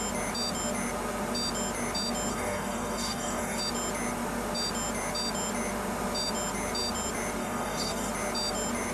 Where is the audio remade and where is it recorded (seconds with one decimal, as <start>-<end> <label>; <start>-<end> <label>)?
0.0-2.3 recorded; 2.3-3.6 remade; 3.6-7.4 recorded; 7.4-8.1 remade; 8.1-8.9 recorded